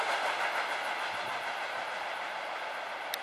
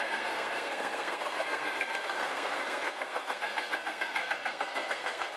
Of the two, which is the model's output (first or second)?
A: second